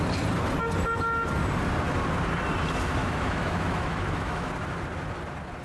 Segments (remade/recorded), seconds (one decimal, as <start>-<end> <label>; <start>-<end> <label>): 0.0-3.0 recorded; 3.0-4.5 remade; 4.5-5.6 recorded